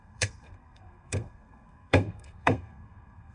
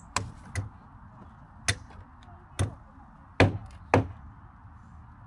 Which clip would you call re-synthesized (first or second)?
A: first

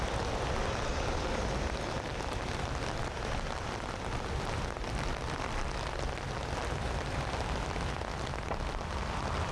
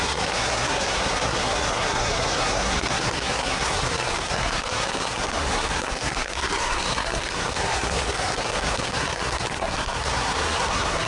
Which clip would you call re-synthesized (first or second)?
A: second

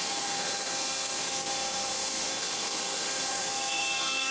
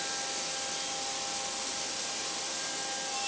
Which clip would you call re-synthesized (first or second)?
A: first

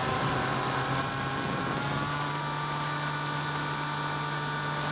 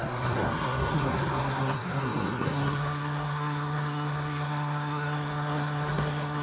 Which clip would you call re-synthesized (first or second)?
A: second